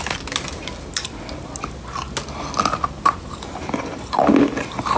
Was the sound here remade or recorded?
recorded